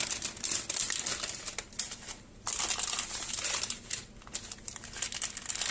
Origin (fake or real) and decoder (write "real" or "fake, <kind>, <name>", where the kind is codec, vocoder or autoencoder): real